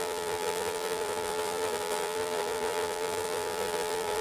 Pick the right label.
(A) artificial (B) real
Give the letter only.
A